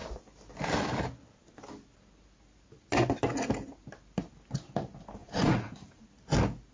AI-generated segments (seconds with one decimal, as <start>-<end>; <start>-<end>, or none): 5.2-6.0